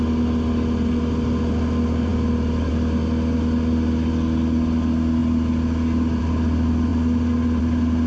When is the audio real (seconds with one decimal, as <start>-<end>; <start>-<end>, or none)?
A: 0.0-8.1